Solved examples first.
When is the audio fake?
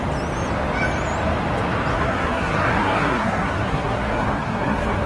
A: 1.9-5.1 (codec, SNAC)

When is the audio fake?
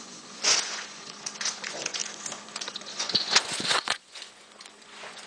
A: 0.0-5.3 (vocoder, Vocos)